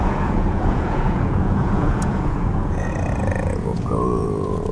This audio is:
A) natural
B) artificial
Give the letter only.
B